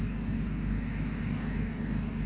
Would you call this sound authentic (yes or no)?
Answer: no